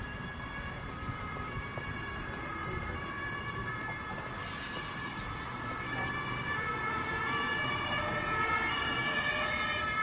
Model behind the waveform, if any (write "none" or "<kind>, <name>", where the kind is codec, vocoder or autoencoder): none